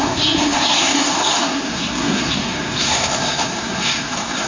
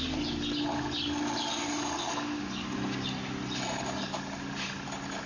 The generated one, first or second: first